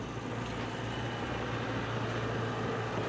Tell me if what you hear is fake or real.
real